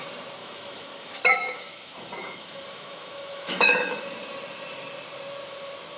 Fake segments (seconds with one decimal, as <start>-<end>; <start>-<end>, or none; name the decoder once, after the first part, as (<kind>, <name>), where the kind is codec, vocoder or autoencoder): 0.4-4.0 (autoencoder, DAC-VAE)